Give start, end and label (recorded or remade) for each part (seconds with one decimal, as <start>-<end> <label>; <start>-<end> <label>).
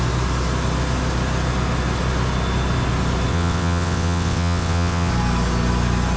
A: 0.0-3.3 recorded; 3.3-5.1 remade; 5.1-6.2 recorded